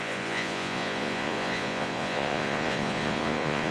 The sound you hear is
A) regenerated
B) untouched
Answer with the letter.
A